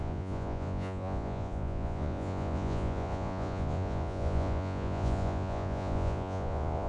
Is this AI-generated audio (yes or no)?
yes